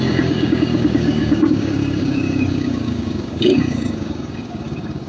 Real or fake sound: fake